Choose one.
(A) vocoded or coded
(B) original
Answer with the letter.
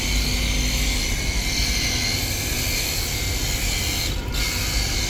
B